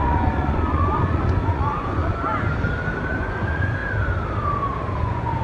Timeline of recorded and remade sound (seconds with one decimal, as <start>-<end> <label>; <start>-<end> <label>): 0.0-2.1 remade; 2.1-3.1 recorded; 3.1-3.8 remade; 3.8-4.9 recorded; 4.9-5.4 remade